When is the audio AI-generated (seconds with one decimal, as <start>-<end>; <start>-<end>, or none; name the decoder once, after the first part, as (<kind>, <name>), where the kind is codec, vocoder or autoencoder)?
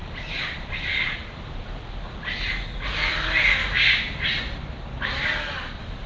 none